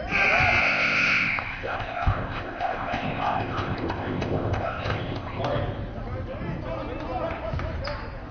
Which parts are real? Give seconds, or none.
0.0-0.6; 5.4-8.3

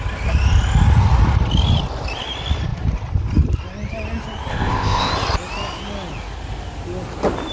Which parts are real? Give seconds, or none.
0.0-4.5; 5.1-7.5